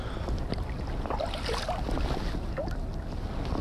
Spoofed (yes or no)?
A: no